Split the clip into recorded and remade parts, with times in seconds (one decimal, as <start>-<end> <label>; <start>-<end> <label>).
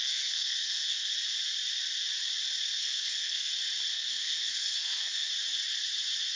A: 0.0-1.1 remade; 1.1-2.8 recorded; 2.8-3.5 remade; 3.5-3.9 recorded; 3.9-5.3 remade; 5.3-6.4 recorded